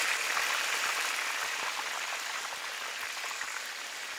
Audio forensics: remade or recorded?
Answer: recorded